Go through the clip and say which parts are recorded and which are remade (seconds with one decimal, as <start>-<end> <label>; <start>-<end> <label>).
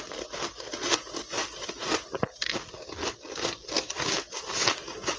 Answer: 0.0-5.2 recorded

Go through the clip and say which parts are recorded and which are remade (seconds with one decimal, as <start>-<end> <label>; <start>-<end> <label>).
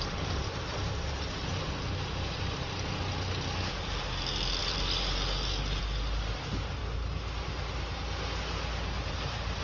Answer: 0.0-9.6 recorded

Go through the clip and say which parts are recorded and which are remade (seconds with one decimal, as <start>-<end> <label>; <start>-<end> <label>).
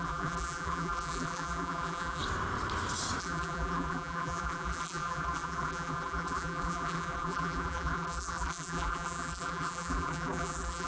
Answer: 0.0-2.2 remade; 2.2-3.2 recorded; 3.2-10.9 remade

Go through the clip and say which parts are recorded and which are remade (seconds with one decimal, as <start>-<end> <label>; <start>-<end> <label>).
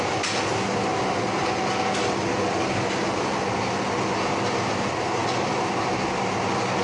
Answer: 0.0-6.8 recorded